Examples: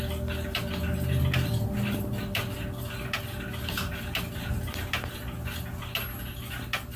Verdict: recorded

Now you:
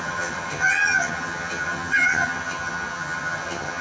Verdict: remade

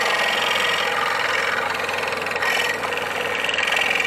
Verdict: recorded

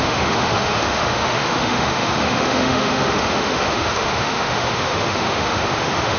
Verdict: remade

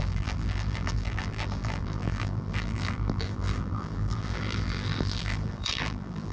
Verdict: remade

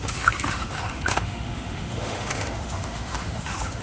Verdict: remade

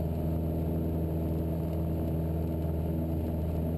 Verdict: recorded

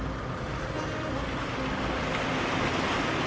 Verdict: recorded